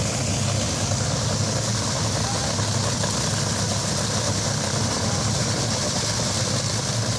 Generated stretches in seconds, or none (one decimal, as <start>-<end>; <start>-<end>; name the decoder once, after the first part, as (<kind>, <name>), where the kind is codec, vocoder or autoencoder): 4.3-7.2 (vocoder, BigVGAN v2)